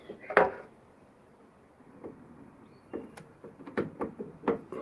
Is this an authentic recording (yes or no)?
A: yes